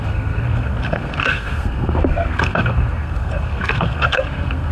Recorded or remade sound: remade